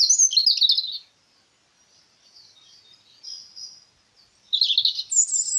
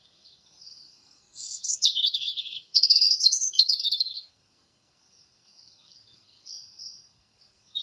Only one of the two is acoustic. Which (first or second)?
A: first